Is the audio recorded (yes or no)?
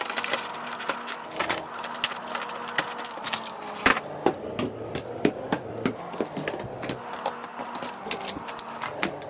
yes